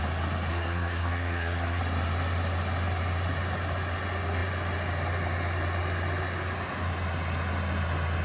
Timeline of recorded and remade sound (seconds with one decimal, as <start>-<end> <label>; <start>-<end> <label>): 0.0-0.5 recorded; 0.5-1.8 remade; 1.8-8.2 recorded